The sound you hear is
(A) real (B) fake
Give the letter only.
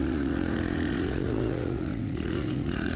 B